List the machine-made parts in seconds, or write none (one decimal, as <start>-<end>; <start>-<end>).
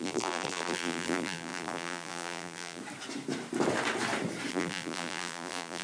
0.0-2.8; 4.5-5.8